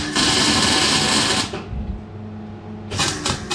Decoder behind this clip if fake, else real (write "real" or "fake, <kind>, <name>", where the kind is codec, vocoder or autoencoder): real